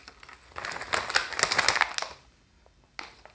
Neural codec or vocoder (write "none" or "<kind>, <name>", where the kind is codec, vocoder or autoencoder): none